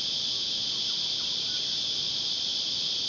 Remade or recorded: recorded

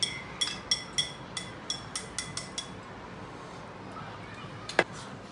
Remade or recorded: recorded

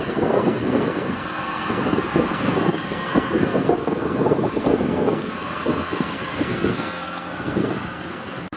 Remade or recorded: remade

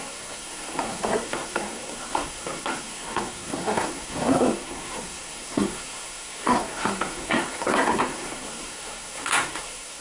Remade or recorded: remade